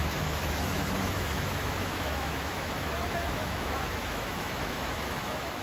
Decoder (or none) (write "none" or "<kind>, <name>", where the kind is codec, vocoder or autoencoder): autoencoder, DAC-VAE